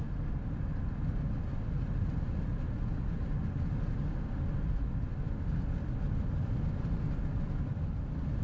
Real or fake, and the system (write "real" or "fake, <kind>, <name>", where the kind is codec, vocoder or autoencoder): real